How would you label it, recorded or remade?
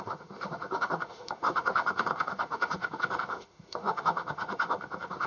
remade